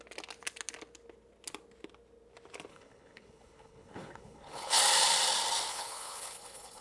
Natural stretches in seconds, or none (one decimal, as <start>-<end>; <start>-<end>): 0.0-2.7; 4.8-5.7